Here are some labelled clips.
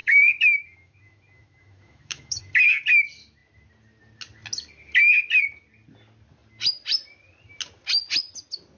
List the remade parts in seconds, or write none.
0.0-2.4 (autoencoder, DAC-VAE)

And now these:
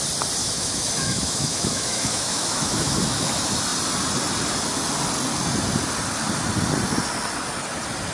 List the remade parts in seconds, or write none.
0.4-3.3 (autoencoder, DAC-VAE)

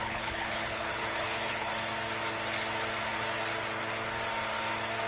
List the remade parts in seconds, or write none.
0.0-1.7 (codec, HILCodec)

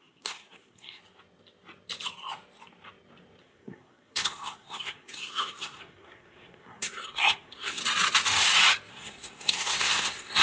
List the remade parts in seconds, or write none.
0.0-1.0 (codec, SNAC); 3.4-7.8; 8.9-10.4

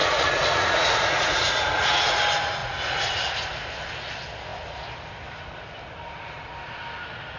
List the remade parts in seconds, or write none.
0.0-2.2 (vocoder, Vocos); 2.6-3.4